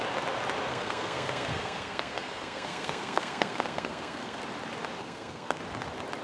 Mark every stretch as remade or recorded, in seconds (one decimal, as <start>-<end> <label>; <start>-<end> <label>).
0.0-0.7 recorded; 0.7-4.4 remade; 4.4-5.0 recorded; 5.0-5.6 remade; 5.6-6.2 recorded